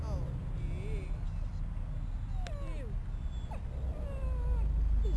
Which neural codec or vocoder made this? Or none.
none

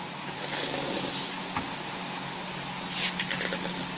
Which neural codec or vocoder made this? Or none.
none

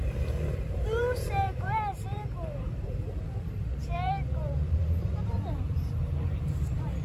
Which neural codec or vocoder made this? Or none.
vocoder, BigVGAN v2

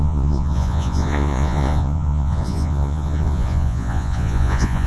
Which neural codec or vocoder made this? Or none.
vocoder, Vocos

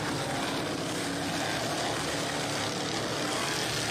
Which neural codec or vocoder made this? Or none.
none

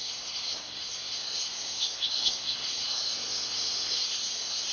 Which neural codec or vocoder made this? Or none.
codec, SNAC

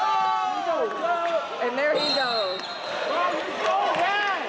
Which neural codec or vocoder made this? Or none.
none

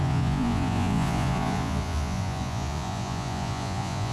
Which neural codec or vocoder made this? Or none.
vocoder, Vocos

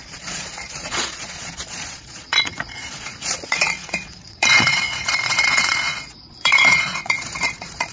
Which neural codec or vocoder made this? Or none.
vocoder, Vocos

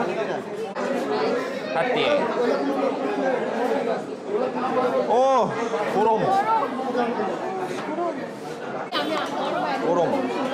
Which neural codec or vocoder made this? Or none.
none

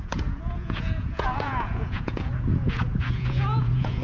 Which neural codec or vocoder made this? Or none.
vocoder, Vocos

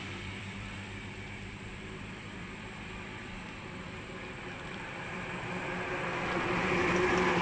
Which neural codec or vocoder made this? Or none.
vocoder, BigVGAN v2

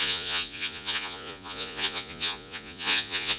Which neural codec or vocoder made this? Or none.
vocoder, Vocos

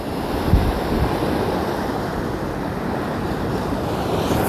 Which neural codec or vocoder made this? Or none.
none